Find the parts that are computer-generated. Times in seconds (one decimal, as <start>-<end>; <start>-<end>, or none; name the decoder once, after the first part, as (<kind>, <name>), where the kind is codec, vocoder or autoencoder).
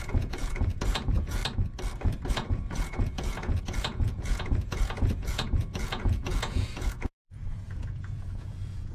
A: 0.0-1.4 (vocoder, Vocos); 2.3-8.9